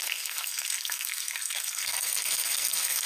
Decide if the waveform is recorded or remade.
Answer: remade